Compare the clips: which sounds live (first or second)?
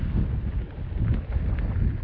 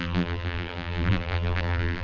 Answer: first